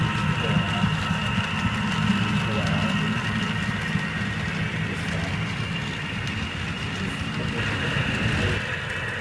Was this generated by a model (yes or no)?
no